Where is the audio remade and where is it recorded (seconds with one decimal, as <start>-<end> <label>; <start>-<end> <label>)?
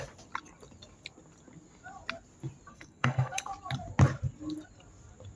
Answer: 0.0-2.7 recorded; 2.7-3.4 remade; 3.4-5.4 recorded